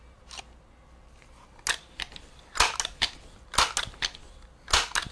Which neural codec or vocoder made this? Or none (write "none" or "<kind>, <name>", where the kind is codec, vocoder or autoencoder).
none